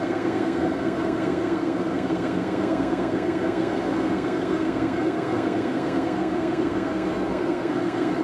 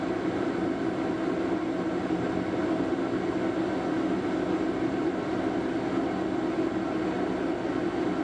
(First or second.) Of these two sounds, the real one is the second